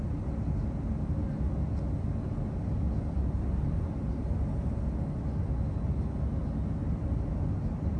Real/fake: real